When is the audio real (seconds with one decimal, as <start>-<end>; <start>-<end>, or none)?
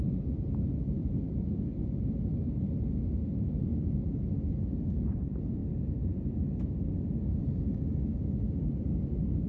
0.0-1.0; 1.6-9.5